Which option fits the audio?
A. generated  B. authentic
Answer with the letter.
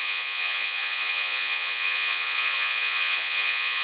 A